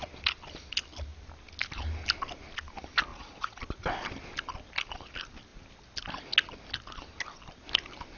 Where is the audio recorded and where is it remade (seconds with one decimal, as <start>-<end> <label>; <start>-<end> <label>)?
0.0-3.1 recorded; 3.1-3.6 remade; 3.6-8.2 recorded